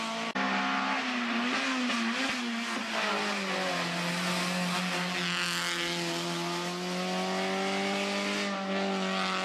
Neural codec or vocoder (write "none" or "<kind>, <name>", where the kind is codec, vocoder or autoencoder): none